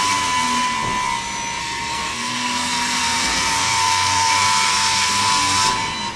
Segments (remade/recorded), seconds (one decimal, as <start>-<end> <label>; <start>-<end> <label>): 0.0-1.6 recorded; 1.6-5.3 remade; 5.3-6.2 recorded